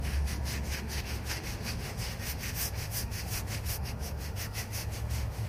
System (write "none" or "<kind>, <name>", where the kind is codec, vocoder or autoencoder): autoencoder, DAC-VAE